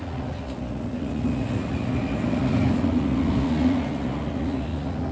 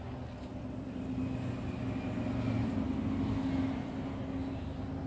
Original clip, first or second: second